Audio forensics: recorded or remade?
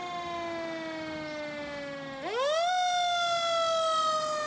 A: recorded